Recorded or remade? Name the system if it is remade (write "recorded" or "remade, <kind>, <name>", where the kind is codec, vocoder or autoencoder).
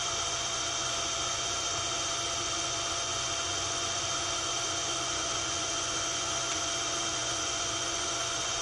remade, vocoder, Vocos